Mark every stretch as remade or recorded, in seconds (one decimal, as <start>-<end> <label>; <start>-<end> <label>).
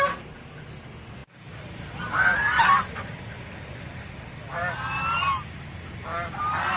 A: 0.0-6.8 recorded